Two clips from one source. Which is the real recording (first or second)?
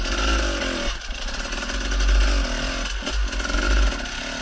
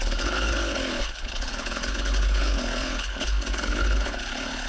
first